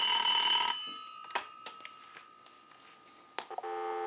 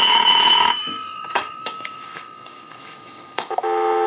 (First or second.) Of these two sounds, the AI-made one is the second